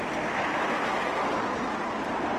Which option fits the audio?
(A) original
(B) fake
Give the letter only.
A